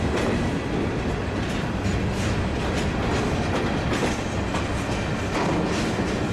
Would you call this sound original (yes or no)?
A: yes